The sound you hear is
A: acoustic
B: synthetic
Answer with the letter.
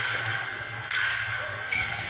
B